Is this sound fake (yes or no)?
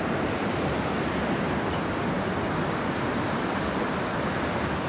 no